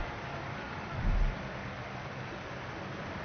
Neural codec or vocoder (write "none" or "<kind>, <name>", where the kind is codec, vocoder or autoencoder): vocoder, BigVGAN v2